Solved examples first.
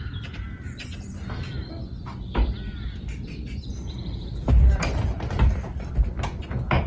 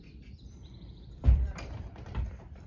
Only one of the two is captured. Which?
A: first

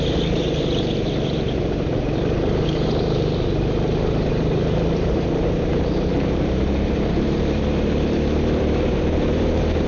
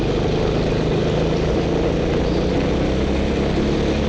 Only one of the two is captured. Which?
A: second